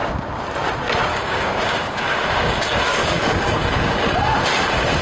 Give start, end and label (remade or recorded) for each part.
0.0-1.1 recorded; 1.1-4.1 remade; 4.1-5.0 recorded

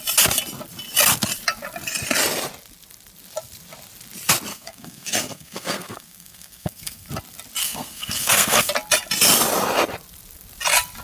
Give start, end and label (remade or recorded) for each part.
0.0-4.5 recorded; 4.5-7.1 remade; 7.1-7.6 recorded; 7.6-8.7 remade; 8.7-11.0 recorded

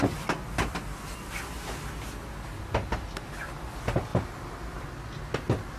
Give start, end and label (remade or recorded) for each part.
0.0-5.8 recorded